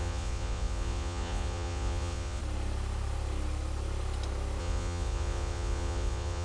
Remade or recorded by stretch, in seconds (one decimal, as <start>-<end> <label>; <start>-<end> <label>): 0.0-2.4 remade; 2.4-4.6 recorded; 4.6-6.4 remade